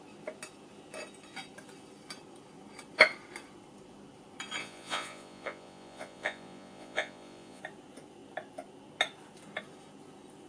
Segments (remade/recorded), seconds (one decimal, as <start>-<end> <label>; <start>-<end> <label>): 0.0-4.6 recorded; 4.6-7.6 remade; 7.6-10.5 recorded